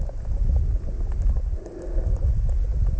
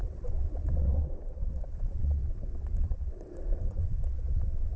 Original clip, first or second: first